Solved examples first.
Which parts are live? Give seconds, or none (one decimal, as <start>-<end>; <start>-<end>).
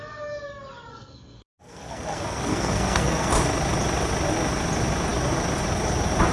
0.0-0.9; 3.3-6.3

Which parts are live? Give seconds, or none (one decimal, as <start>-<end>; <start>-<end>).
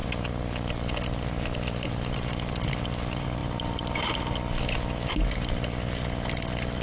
0.0-6.8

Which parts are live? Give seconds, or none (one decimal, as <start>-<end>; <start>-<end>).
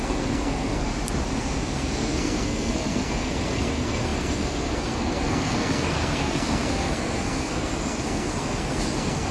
0.9-1.4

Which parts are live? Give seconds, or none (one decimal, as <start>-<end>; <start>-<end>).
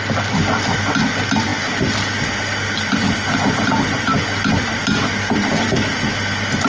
0.0-6.7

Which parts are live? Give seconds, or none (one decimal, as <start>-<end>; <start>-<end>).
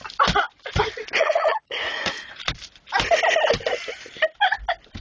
0.0-1.2; 2.4-5.0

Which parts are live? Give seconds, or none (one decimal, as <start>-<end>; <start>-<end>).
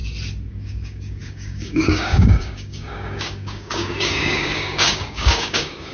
0.0-0.5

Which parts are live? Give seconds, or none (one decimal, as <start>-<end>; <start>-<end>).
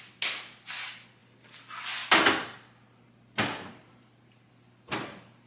0.0-5.5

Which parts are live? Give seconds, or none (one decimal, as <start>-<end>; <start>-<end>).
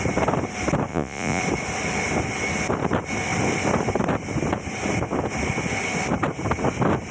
0.0-0.9; 1.4-7.1